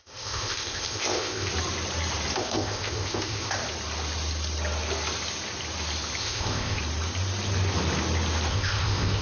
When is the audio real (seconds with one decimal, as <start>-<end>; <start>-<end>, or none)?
1.5-2.4; 3.6-6.2; 6.8-8.5